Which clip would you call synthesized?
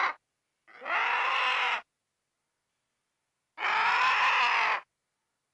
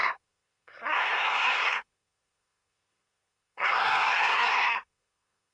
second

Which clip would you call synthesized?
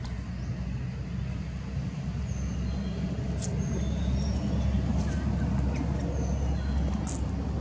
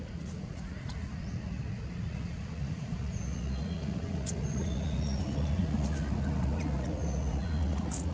second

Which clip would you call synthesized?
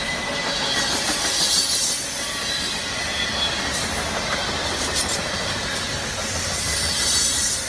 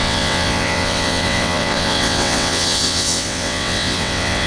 second